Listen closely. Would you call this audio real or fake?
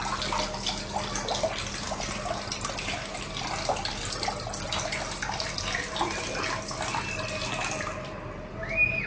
real